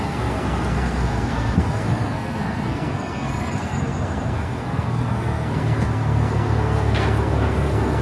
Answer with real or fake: fake